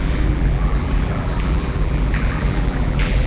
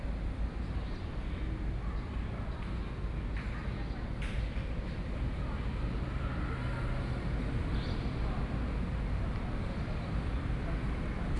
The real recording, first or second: second